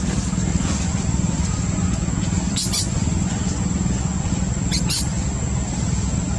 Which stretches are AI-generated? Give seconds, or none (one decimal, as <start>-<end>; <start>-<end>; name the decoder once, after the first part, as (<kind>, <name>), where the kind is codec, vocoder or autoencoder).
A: 0.5-4.3 (vocoder, Vocos)